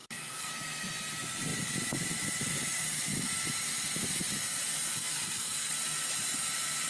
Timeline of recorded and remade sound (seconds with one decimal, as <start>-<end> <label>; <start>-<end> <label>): 0.0-0.5 remade; 0.5-5.0 recorded; 5.0-5.7 remade; 5.7-6.9 recorded